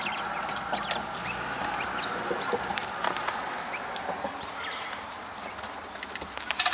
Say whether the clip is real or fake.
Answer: real